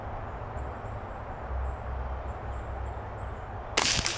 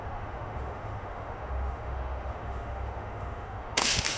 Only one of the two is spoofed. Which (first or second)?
second